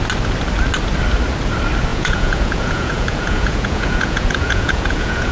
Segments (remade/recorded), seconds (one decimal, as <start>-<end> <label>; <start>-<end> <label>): 0.0-1.9 recorded; 1.9-5.3 remade